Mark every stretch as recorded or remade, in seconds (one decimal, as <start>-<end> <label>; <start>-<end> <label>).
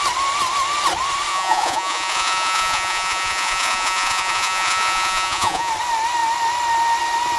0.0-1.3 recorded; 1.3-5.7 remade; 5.7-7.4 recorded